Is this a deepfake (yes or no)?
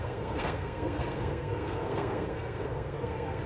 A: yes